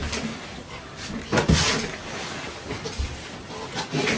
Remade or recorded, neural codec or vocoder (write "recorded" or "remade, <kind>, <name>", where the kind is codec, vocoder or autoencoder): recorded